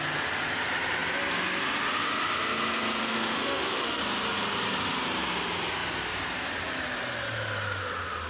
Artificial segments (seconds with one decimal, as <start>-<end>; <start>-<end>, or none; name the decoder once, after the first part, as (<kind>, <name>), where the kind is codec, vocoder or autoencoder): 3.0-4.0 (autoencoder, DAC-VAE)